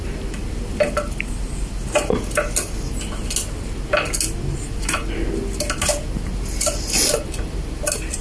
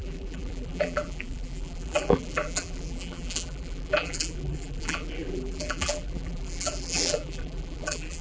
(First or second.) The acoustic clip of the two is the first